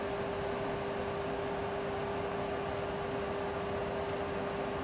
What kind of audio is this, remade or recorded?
recorded